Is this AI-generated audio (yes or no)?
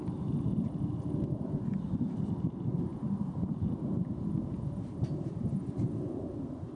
no